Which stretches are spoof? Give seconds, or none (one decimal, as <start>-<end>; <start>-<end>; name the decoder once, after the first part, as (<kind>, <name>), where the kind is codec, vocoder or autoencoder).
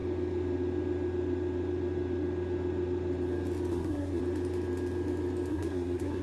3.7-4.2 (codec, SNAC); 5.5-6.2